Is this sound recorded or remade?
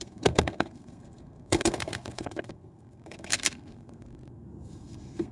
remade